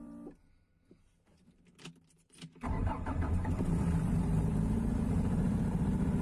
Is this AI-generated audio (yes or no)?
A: yes